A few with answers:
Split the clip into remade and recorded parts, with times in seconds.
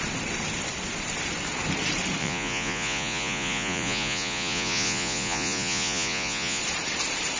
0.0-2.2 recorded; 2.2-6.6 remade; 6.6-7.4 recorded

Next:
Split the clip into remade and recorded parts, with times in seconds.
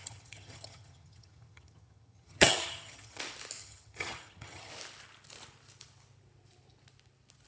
0.0-3.2 remade; 3.2-3.6 recorded; 3.6-4.7 remade; 4.7-7.5 recorded